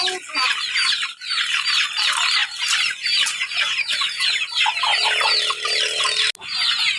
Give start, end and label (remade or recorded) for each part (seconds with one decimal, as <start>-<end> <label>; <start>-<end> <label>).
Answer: 0.0-7.0 recorded